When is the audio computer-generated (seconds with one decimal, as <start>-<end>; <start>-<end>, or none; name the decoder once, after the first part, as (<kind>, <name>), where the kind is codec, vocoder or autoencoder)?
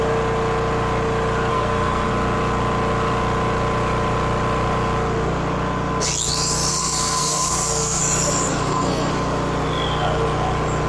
1.5-2.1 (codec, SNAC); 6.7-8.0; 8.5-9.1